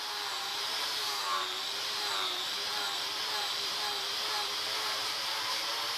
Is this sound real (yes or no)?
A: no